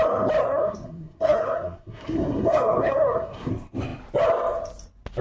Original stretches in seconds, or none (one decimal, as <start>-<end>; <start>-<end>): 0.0-0.4; 3.5-5.2